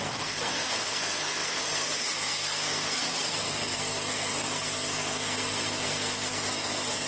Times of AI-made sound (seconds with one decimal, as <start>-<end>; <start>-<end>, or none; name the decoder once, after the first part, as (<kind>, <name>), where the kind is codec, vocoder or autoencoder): 0.0-7.1 (codec, SNAC)